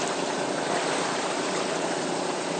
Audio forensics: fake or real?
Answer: fake